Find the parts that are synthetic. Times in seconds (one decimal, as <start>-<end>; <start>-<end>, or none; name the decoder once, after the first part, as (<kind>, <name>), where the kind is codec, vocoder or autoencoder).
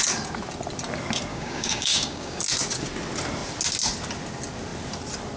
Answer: 1.3-2.4 (codec, DAC)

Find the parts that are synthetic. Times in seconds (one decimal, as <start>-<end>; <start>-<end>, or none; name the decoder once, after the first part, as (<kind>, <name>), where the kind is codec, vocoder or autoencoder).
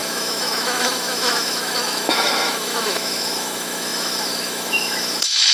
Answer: 0.0-5.5 (autoencoder, DAC-VAE)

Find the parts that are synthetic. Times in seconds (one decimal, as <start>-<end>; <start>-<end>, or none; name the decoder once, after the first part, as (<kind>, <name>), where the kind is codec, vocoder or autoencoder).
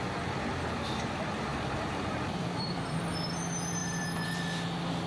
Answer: 1.5-3.0 (vocoder, BigVGAN v2); 3.8-4.4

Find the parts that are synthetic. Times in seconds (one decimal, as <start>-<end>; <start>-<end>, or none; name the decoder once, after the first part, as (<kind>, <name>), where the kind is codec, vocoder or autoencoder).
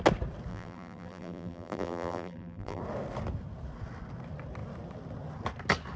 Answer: 0.5-2.8 (vocoder, BigVGAN v2)